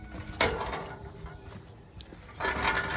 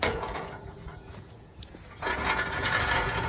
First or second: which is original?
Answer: first